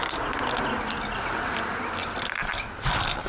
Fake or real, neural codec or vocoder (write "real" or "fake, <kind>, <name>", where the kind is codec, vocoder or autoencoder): real